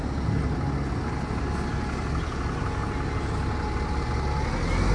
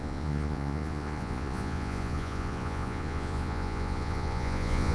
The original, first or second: first